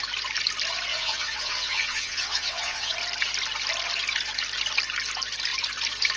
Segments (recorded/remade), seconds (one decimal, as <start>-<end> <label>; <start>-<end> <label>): 0.0-0.9 recorded; 0.9-2.9 remade; 2.9-6.2 recorded